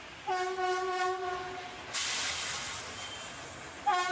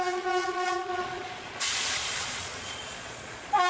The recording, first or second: first